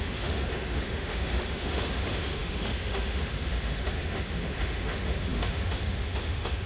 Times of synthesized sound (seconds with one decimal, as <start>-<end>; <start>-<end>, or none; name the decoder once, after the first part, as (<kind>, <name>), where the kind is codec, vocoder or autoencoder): 0.0-6.7 (autoencoder, DAC-VAE)